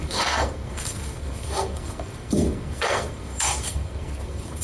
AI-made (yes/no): yes